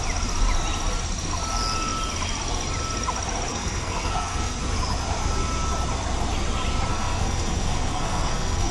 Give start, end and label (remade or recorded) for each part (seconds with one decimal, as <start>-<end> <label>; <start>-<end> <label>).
0.0-3.5 recorded; 3.5-4.6 remade; 4.6-6.9 recorded; 6.9-8.7 remade